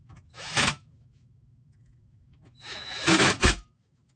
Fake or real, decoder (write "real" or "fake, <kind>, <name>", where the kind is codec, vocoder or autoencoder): fake, autoencoder, DAC-VAE